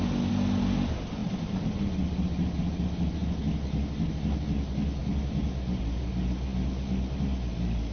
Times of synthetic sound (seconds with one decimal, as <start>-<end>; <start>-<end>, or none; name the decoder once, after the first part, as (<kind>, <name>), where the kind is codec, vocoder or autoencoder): 5.0-6.1 (vocoder, BigVGAN v2)